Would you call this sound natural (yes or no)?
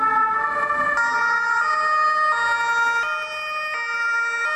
yes